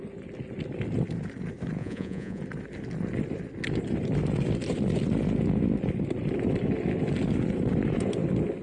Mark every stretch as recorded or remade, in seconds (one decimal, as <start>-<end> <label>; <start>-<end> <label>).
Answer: 0.0-1.8 recorded; 1.8-2.4 remade; 2.4-8.6 recorded